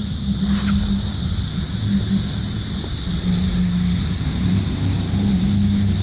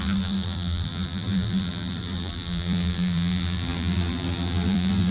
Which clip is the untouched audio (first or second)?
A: first